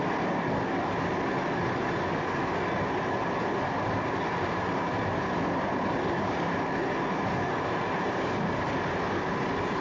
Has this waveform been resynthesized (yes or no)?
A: no